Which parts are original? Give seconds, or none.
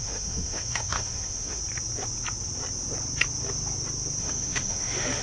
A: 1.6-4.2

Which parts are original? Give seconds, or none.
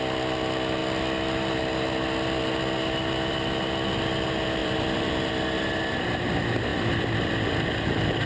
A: 0.0-4.6; 5.3-6.7; 7.3-8.3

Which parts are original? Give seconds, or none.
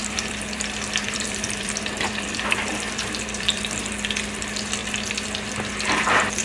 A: 4.8-5.7